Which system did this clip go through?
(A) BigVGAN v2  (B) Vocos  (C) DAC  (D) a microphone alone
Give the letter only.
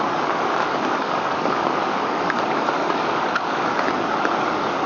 C